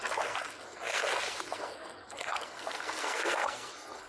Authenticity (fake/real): fake